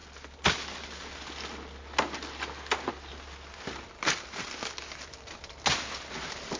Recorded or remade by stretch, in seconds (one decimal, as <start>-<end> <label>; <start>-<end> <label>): 0.0-6.6 recorded